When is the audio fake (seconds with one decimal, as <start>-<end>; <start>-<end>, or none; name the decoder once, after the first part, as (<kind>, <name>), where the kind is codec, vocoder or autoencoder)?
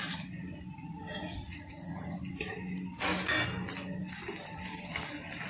1.2-2.2 (vocoder, Vocos)